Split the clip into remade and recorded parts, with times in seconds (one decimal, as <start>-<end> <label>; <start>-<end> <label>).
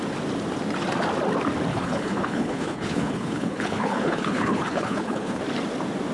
0.0-1.7 recorded; 1.7-5.4 remade; 5.4-6.1 recorded